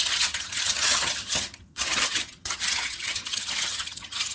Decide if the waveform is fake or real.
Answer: fake